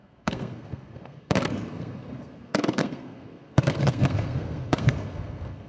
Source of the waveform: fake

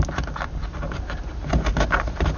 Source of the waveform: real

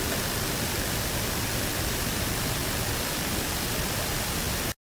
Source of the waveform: real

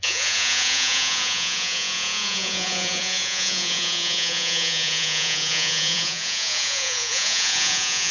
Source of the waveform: fake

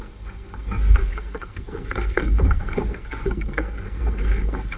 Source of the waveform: fake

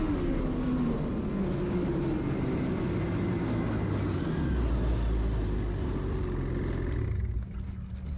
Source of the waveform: real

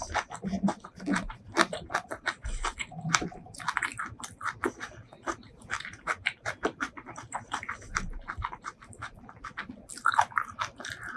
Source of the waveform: real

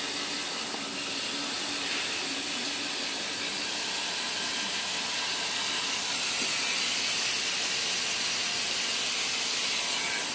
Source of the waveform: real